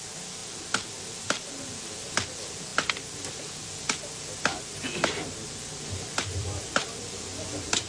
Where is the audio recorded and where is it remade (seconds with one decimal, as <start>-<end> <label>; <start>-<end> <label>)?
0.0-7.9 recorded